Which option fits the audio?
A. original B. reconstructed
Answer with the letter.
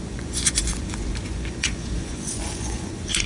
B